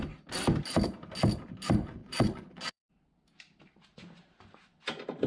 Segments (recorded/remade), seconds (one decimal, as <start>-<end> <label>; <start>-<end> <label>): 0.0-2.0 recorded; 2.0-2.9 remade; 2.9-5.3 recorded